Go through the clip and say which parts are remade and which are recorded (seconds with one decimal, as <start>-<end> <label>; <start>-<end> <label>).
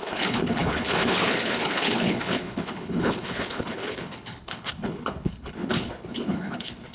0.0-6.9 remade